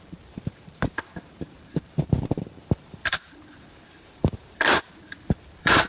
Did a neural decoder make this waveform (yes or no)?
yes